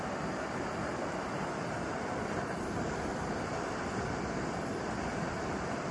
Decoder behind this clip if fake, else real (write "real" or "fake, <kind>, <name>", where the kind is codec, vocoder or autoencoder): real